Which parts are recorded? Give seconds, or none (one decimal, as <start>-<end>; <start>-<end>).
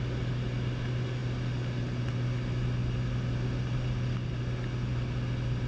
0.0-5.7